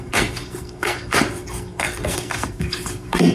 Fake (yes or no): yes